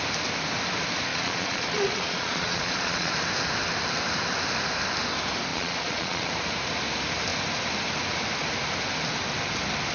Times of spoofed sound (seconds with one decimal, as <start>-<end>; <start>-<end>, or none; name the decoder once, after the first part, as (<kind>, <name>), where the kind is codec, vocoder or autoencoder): 1.1-3.1 (vocoder, Vocos); 5.5-6.3